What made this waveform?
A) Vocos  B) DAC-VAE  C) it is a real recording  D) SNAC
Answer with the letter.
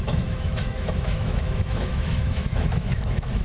B